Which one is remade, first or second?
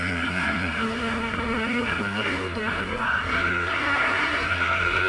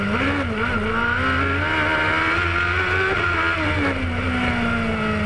first